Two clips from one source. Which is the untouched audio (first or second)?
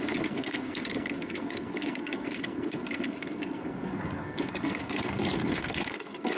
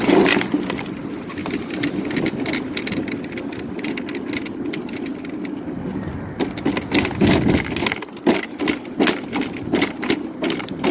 second